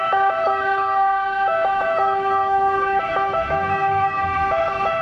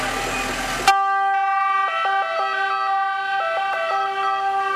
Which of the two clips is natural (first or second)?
second